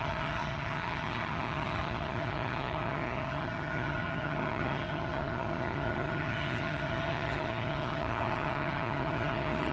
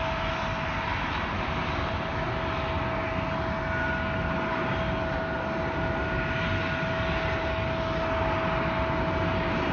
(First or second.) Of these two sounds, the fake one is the first